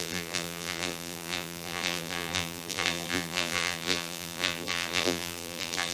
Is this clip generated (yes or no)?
yes